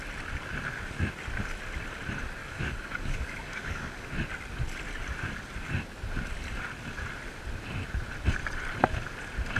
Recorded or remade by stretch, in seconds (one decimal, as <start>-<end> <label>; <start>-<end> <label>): 0.0-2.4 recorded; 2.4-4.1 remade; 4.1-9.6 recorded